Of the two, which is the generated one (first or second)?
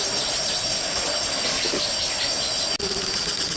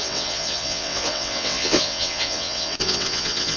second